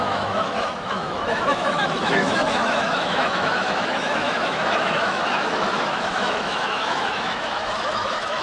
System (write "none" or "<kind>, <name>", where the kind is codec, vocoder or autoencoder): autoencoder, DAC-VAE